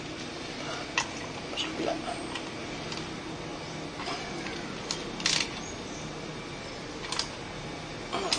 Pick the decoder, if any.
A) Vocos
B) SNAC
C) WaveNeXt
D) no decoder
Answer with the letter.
D